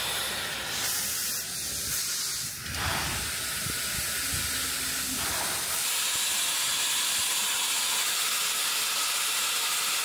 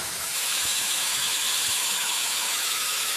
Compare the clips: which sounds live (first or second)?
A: first